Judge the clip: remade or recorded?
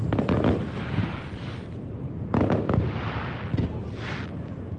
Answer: recorded